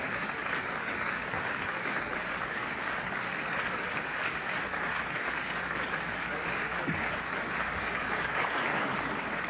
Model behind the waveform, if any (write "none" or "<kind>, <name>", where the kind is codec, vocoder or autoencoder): codec, DAC